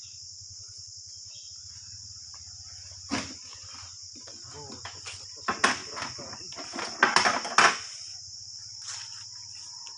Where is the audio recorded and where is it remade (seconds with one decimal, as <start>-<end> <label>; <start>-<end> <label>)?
0.0-10.0 recorded